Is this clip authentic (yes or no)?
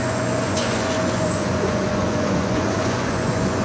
no